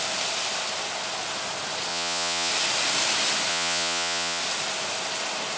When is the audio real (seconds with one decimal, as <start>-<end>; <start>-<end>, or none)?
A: 0.0-1.9; 2.5-3.5; 4.4-5.6